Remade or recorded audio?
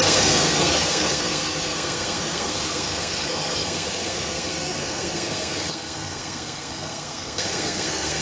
remade